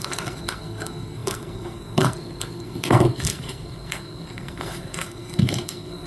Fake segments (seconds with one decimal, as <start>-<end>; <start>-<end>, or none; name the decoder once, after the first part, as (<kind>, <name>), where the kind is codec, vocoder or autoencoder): 0.0-6.1 (codec, SNAC)